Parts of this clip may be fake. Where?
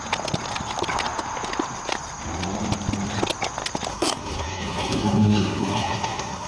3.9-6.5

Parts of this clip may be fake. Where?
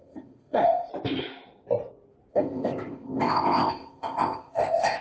0.0-0.9; 2.3-5.0